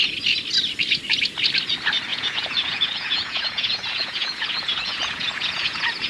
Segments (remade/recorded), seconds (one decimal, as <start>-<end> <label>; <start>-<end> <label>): 0.0-2.1 recorded; 2.1-6.1 remade